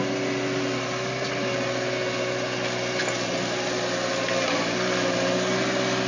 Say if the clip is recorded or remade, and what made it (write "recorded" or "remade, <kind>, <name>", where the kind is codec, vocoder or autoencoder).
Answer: recorded